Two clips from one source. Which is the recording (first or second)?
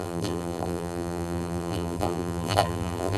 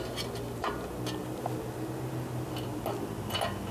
second